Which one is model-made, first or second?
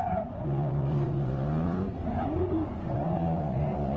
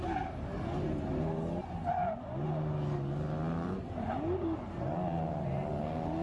first